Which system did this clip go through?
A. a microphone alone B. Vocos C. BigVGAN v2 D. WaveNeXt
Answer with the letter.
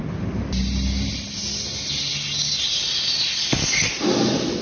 A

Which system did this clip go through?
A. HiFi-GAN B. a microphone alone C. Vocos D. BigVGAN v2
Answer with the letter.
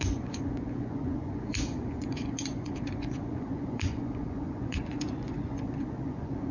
C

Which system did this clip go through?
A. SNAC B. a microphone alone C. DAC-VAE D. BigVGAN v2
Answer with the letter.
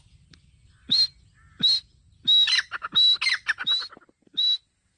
B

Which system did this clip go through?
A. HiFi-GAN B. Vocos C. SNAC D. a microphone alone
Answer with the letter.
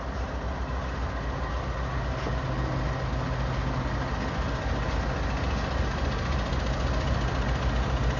D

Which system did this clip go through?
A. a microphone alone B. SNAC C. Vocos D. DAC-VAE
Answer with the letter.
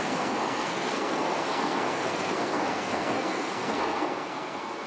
B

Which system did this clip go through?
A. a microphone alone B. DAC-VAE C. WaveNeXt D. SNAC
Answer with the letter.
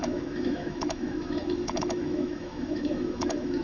B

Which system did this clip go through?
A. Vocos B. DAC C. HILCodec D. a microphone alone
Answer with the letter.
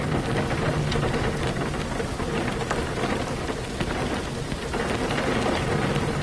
D